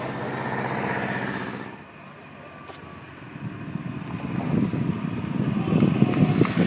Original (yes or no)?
yes